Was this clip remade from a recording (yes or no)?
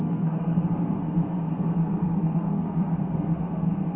yes